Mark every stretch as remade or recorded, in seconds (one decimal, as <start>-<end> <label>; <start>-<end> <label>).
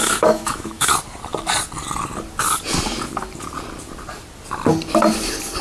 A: 0.0-0.9 remade; 0.9-5.6 recorded